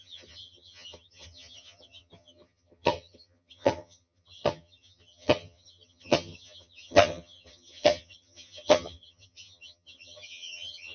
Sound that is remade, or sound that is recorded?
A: remade